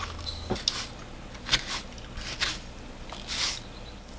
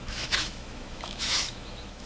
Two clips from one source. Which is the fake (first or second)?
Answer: second